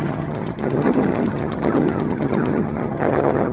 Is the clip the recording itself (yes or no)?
no